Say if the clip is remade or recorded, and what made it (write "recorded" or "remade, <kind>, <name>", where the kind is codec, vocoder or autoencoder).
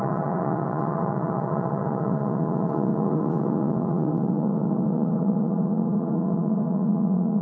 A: remade, vocoder, Vocos